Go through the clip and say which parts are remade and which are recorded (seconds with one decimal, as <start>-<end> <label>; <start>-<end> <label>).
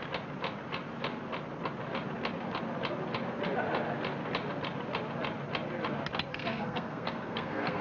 0.0-6.3 recorded; 6.3-7.8 remade